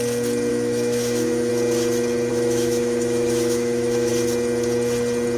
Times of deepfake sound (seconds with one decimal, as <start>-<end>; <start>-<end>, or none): 0.5-1.5; 2.3-4.1